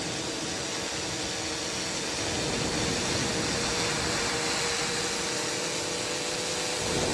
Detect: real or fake real